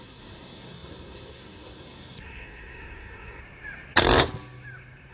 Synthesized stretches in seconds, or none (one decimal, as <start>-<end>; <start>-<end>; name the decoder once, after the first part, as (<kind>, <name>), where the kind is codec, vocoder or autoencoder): 0.0-3.4 (codec, SNAC)